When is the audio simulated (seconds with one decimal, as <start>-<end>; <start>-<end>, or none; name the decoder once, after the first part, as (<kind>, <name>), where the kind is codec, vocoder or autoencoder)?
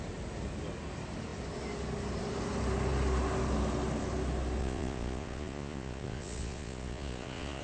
4.6-7.6 (vocoder, Vocos)